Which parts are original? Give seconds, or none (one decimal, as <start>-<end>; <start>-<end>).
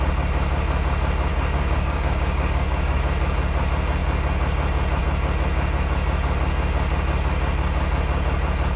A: 0.0-1.3; 3.0-8.8